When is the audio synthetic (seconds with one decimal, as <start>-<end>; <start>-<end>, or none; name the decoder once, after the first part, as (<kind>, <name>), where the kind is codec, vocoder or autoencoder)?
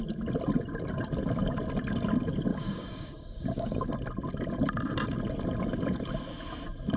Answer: 2.5-3.9 (codec, DAC)